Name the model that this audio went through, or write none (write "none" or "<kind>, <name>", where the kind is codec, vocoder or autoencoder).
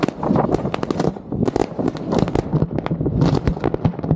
none